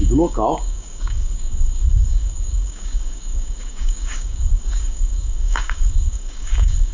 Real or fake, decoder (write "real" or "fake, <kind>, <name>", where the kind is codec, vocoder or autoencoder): fake, codec, DAC